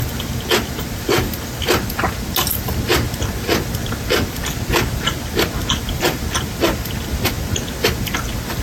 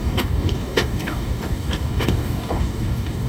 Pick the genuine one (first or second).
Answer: first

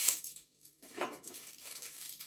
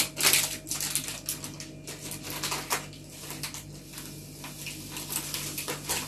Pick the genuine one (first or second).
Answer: second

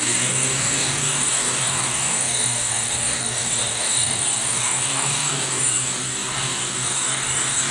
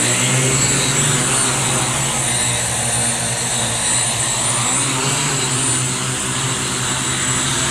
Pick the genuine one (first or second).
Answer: second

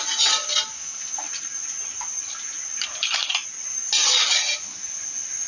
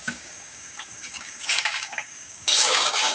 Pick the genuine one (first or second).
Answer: first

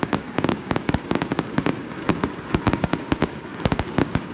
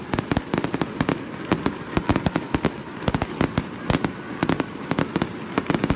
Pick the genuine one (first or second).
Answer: second